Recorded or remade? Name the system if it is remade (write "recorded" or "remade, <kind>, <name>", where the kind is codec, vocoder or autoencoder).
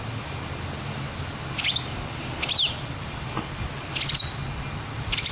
recorded